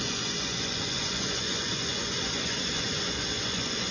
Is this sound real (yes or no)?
no